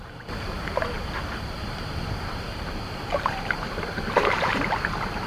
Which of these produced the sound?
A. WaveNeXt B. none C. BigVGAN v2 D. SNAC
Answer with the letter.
C